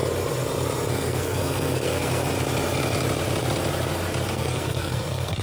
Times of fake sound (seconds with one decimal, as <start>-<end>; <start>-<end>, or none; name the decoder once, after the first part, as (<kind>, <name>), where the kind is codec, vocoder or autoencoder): 0.9-2.2 (codec, SNAC); 4.3-5.4

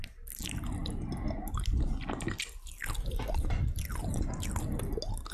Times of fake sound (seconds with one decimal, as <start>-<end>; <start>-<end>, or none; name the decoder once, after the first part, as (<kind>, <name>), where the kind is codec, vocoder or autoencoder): none

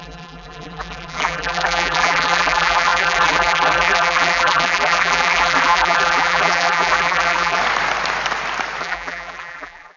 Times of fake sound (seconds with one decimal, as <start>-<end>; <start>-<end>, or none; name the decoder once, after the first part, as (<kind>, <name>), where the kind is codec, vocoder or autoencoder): 0.0-7.6 (vocoder, BigVGAN v2); 8.8-10.0

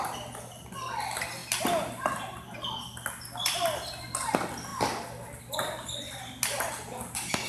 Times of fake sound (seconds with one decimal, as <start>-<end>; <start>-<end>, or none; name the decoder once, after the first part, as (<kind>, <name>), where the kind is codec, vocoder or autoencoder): none